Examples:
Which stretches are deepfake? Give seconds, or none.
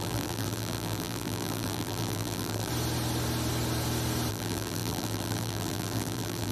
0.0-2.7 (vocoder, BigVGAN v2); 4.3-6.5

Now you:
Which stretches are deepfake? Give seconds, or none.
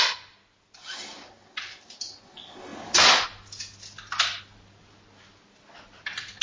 none